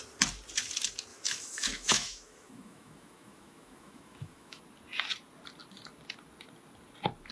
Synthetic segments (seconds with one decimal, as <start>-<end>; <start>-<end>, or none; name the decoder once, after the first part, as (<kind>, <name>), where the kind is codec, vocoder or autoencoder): 1.1-4.6 (autoencoder, DAC-VAE)